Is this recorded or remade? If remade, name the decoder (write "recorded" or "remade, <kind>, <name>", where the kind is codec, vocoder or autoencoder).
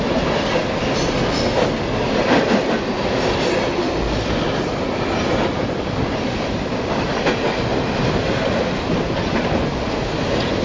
recorded